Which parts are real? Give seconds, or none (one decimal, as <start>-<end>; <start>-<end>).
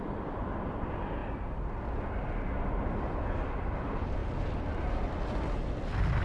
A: 0.0-6.2